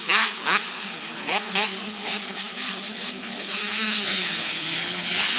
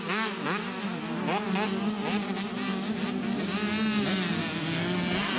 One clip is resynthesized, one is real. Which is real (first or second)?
second